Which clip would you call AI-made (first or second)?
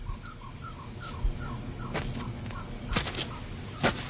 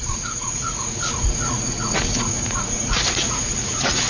second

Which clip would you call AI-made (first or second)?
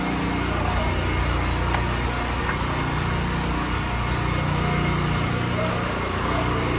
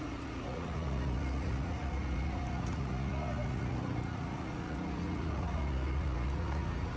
second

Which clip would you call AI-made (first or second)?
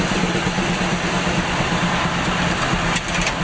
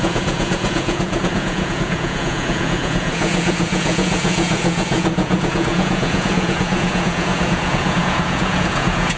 second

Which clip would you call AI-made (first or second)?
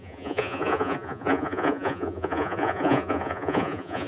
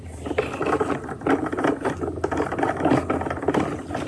first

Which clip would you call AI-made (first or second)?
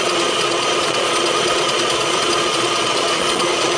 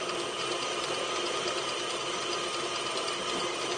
first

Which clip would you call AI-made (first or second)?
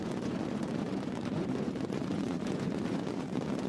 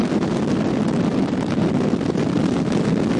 first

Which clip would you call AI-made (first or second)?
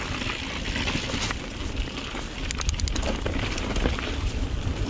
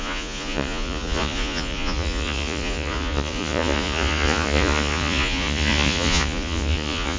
second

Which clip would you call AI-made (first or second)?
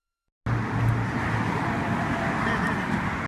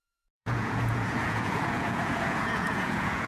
second